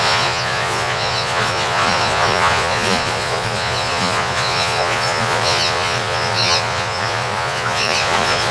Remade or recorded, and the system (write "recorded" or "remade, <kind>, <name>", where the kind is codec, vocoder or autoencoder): remade, vocoder, Vocos